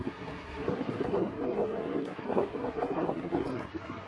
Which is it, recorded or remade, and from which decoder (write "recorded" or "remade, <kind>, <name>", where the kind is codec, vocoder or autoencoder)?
remade, codec, SNAC